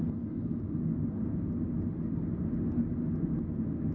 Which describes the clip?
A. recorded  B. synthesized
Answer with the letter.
A